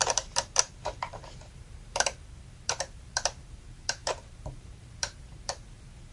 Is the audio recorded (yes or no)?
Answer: no